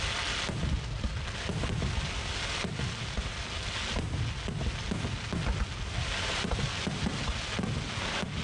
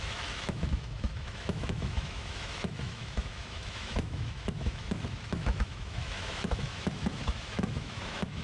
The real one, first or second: first